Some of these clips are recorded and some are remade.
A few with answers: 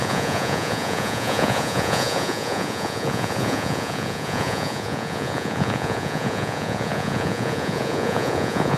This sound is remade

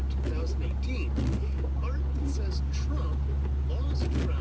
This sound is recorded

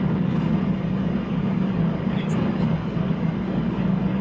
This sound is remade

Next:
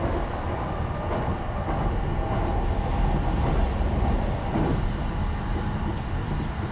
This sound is recorded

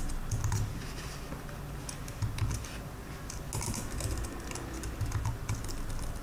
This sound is recorded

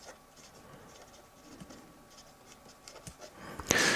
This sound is recorded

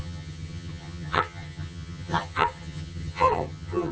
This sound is remade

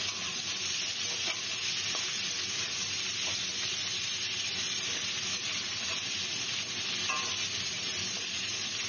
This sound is recorded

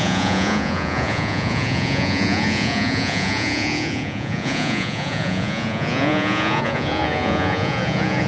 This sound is remade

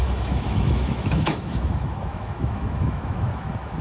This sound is remade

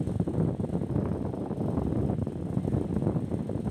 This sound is recorded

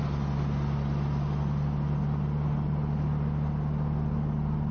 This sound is recorded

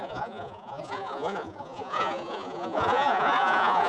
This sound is remade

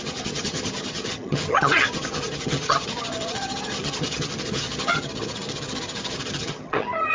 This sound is remade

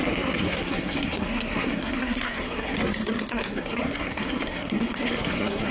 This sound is remade